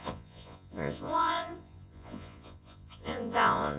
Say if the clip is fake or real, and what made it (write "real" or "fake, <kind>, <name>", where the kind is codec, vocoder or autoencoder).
fake, vocoder, Vocos